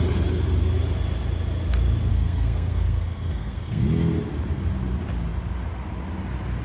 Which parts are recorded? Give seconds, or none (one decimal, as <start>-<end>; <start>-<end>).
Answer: 0.0-2.1; 3.8-6.6